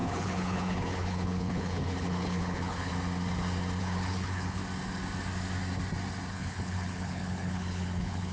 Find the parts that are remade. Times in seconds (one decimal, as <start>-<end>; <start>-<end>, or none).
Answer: 0.0-2.9; 3.8-4.6; 6.3-8.3